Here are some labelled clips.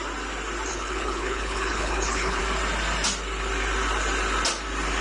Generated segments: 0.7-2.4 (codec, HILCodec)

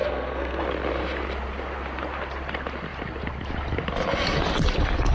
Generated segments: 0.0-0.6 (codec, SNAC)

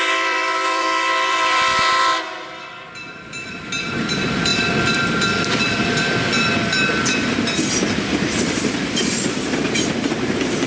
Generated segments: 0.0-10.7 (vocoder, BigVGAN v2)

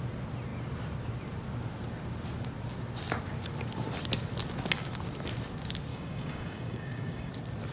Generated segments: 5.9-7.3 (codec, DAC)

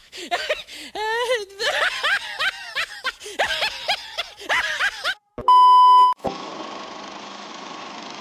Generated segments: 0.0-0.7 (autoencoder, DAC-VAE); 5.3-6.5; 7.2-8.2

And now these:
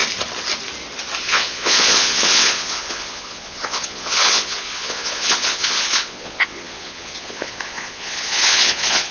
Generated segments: 1.2-9.1 (vocoder, Vocos)

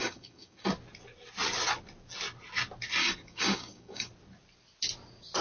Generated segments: 0.0-0.7 (codec, DAC); 3.0-4.1

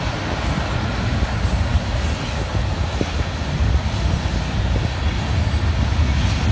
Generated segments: none